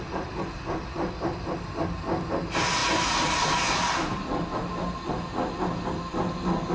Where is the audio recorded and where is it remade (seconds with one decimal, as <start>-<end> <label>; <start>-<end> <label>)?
0.0-6.7 recorded